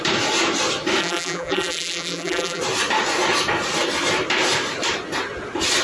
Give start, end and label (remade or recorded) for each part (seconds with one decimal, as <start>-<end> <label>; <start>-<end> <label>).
0.0-1.0 recorded; 1.0-2.6 remade; 2.6-5.8 recorded

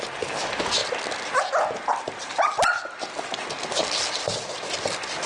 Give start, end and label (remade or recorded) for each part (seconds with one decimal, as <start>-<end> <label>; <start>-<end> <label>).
0.0-5.3 recorded

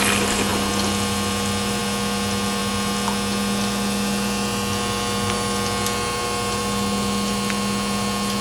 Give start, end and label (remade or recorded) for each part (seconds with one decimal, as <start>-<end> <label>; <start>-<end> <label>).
0.0-8.4 remade

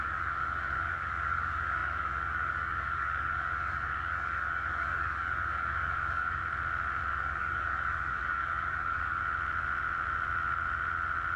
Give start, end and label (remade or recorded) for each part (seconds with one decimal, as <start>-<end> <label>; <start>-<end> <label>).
0.0-6.4 remade; 6.4-7.1 recorded; 7.1-9.2 remade; 9.2-11.4 recorded

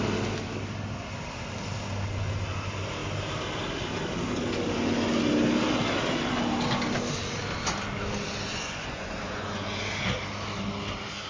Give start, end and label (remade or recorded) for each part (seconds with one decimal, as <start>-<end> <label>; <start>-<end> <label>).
0.0-8.5 recorded; 8.5-9.8 remade; 9.8-11.3 recorded

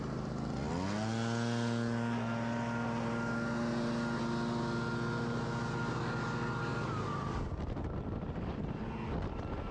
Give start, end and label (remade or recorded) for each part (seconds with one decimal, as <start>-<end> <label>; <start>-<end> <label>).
0.0-6.7 recorded; 6.7-8.8 remade; 8.8-9.7 recorded

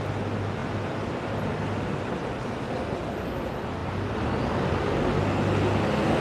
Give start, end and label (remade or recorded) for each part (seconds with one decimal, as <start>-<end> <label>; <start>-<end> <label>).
0.0-6.2 recorded